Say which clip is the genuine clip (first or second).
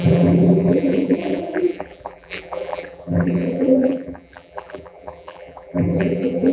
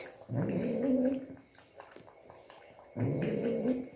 second